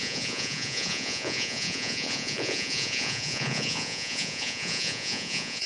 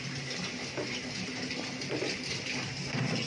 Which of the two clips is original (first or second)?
second